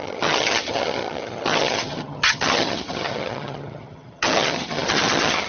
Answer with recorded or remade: remade